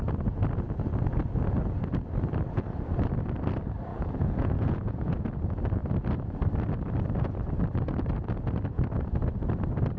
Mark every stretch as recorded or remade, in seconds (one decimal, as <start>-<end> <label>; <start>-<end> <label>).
0.0-3.9 recorded; 3.9-5.2 remade; 5.2-10.0 recorded